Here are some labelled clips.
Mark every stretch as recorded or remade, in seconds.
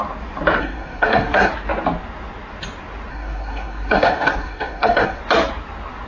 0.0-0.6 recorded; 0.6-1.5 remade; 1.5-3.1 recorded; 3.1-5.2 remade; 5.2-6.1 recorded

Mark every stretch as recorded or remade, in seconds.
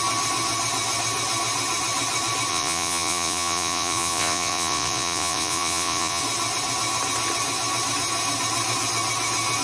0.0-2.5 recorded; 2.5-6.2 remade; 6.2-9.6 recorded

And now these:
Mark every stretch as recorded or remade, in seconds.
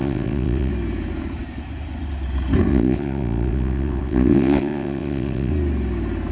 0.0-0.7 remade; 0.7-2.7 recorded; 2.7-5.5 remade; 5.5-6.3 recorded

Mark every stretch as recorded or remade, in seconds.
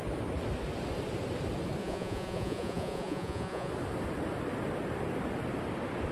0.0-1.8 recorded; 1.8-3.7 remade; 3.7-6.1 recorded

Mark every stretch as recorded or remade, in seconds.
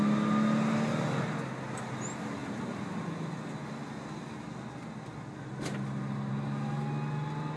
0.0-7.6 recorded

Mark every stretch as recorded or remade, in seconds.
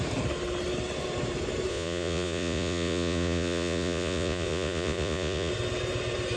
0.0-1.7 recorded; 1.7-5.5 remade; 5.5-6.4 recorded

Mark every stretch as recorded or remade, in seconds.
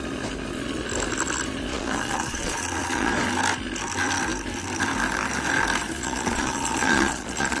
0.0-1.7 recorded; 1.7-3.1 remade; 3.1-6.0 recorded; 6.0-7.6 remade